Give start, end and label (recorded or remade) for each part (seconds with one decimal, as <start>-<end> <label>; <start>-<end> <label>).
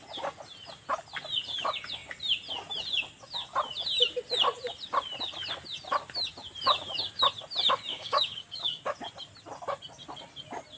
0.0-7.9 recorded; 7.9-8.8 remade; 8.8-10.8 recorded